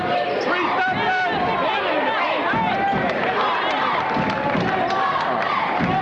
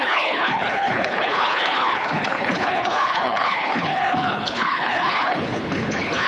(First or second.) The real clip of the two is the first